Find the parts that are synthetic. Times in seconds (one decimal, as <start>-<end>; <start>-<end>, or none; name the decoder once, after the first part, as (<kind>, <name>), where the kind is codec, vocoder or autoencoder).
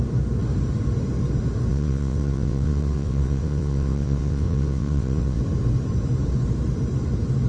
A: 1.7-5.4 (vocoder, WaveNeXt)